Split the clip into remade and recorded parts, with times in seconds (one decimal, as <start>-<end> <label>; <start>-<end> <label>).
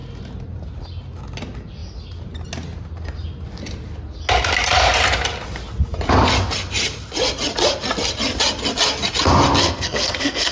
0.0-9.6 recorded; 9.6-10.5 remade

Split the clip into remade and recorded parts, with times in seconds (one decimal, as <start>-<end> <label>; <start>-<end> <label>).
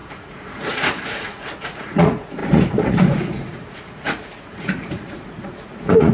0.0-6.1 remade